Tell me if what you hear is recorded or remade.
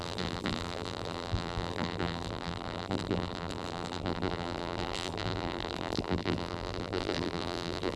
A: remade